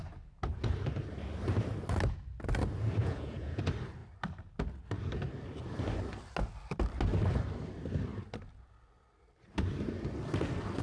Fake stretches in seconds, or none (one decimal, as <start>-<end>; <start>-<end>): 3.0-3.6

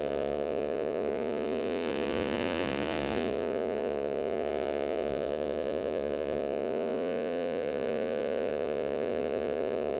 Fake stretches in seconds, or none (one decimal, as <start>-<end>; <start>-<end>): 0.0-10.0

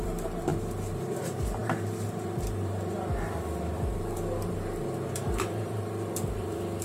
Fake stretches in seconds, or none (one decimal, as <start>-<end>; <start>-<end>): 0.0-6.8

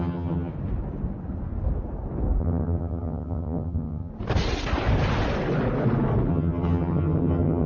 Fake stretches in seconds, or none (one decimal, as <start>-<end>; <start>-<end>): 0.0-0.5; 2.4-4.1; 6.3-7.7